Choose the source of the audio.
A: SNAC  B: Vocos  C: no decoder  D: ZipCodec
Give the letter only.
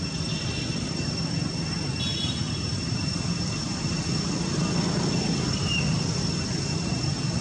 C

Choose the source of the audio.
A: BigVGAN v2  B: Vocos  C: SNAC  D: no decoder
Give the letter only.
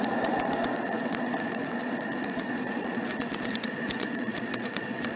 B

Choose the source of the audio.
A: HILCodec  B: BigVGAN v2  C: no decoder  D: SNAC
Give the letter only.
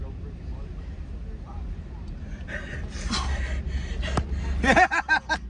C